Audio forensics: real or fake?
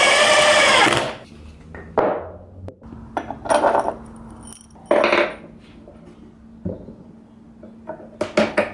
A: real